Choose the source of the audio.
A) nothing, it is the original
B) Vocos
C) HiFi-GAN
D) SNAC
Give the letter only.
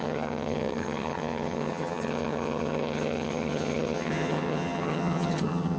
C